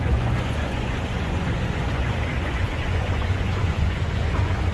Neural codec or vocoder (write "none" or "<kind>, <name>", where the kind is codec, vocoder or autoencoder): vocoder, Vocos